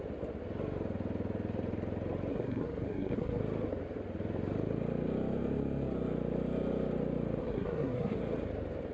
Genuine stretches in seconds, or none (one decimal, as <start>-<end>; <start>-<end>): 0.0-2.3; 3.4-7.4; 8.2-8.9